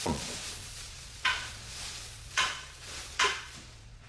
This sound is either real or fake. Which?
fake